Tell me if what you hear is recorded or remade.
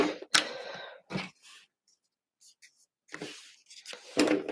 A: recorded